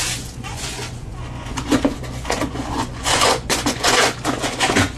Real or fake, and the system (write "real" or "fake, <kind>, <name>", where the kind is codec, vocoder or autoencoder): fake, vocoder, Vocos